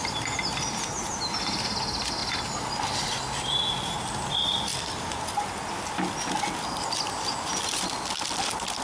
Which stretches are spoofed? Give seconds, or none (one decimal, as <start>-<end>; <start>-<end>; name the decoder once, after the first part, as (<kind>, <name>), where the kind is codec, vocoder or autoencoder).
none